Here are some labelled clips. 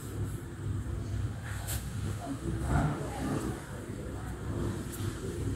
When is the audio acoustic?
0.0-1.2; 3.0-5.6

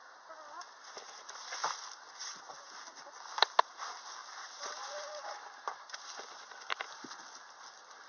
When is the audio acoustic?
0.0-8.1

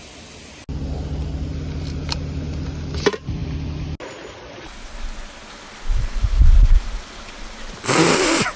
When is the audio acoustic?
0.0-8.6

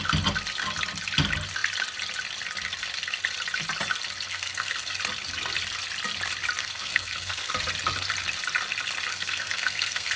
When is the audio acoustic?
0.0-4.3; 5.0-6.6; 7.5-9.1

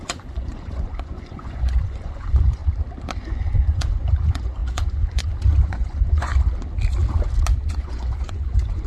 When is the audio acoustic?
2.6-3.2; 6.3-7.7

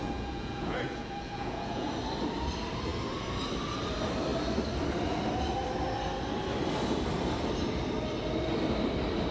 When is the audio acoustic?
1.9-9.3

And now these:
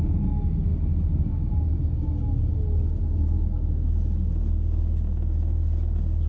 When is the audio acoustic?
0.0-6.3

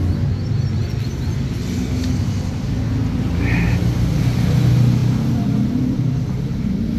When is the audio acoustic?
0.0-7.0